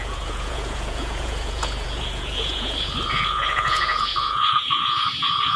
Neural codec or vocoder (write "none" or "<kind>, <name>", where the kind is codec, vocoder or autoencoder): vocoder, Vocos